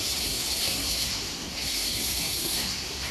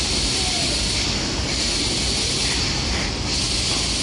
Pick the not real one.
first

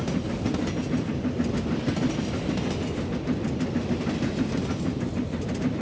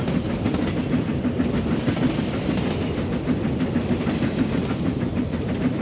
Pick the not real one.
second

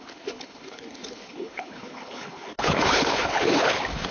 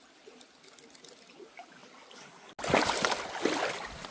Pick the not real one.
first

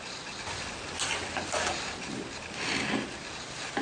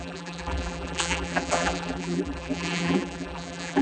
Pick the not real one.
second